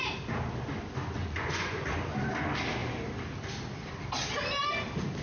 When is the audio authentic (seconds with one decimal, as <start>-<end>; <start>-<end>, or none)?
0.0-1.2; 1.9-5.2